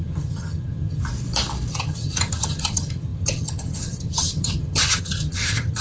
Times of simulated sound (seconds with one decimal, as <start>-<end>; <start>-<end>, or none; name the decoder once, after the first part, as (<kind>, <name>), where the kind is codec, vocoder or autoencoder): 0.0-1.0 (vocoder, HiFi-GAN); 1.7-5.8